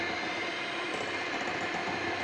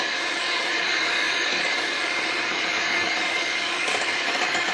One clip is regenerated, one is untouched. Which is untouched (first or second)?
first